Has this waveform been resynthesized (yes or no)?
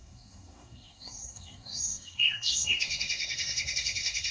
yes